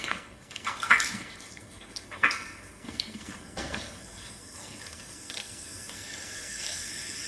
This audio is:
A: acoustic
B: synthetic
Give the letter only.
B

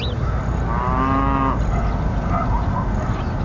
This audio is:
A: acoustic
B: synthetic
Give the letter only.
A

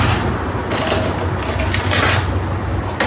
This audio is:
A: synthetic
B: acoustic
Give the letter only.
B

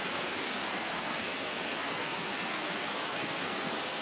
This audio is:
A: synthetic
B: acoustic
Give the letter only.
A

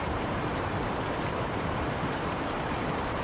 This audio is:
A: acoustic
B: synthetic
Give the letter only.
B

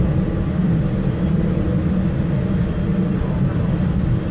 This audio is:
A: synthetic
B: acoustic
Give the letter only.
B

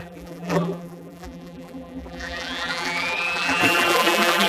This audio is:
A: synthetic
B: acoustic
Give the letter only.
A